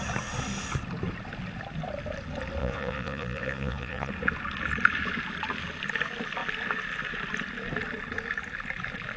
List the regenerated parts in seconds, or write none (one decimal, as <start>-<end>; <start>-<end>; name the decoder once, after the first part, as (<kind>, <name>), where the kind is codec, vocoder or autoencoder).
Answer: 2.6-4.1 (vocoder, Vocos)